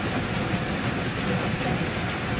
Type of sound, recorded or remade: recorded